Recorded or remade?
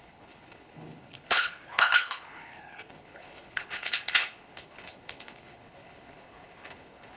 remade